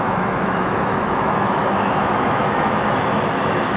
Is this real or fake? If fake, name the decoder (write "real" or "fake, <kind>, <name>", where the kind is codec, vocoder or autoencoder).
fake, autoencoder, DAC-VAE